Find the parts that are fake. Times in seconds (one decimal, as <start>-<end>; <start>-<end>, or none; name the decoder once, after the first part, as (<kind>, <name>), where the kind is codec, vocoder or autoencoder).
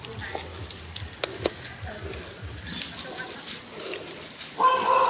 none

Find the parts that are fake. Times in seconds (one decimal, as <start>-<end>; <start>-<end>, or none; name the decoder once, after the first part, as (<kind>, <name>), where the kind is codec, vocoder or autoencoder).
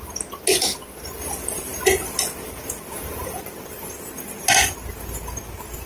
none